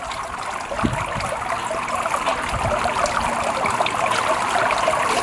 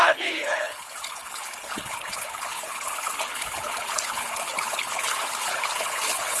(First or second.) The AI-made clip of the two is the second